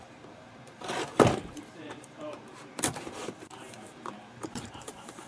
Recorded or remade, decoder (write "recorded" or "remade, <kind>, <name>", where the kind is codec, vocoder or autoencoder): remade, vocoder, BigVGAN v2